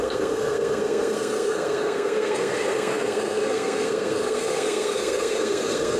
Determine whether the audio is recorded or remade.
remade